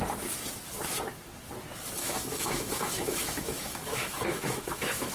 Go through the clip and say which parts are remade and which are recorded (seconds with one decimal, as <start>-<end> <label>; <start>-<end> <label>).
0.0-2.0 recorded; 2.0-5.1 remade